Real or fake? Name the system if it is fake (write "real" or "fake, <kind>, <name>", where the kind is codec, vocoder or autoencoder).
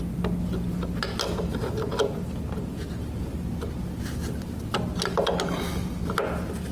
real